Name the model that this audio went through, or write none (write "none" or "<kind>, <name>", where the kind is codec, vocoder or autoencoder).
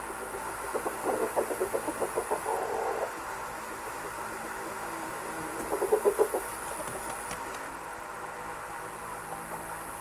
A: none